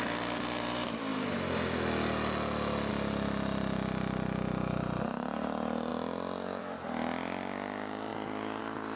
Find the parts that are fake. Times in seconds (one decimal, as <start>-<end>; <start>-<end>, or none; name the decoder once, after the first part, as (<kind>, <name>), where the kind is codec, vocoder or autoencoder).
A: none